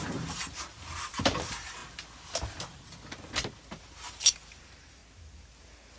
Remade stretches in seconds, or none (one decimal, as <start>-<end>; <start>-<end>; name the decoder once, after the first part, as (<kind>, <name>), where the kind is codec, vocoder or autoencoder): 0.0-1.8 (vocoder, BigVGAN v2); 3.8-5.0